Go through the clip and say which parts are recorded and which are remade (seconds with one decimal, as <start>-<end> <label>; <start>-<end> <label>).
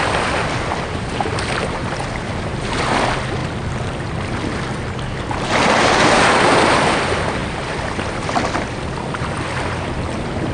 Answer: 0.0-7.4 recorded; 7.4-8.4 remade; 8.4-10.5 recorded